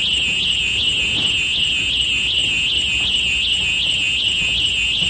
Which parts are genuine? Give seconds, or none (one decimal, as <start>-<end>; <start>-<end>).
0.0-5.1